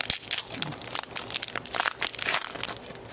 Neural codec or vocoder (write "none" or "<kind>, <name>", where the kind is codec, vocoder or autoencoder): none